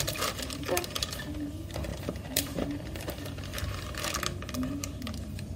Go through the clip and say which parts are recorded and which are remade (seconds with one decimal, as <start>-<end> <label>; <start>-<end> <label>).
0.0-1.9 recorded; 1.9-3.0 remade; 3.0-3.5 recorded; 3.5-4.2 remade; 4.2-5.6 recorded